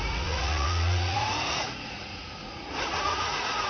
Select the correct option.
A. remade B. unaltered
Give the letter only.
A